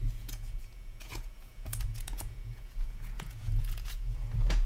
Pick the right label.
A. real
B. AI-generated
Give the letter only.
B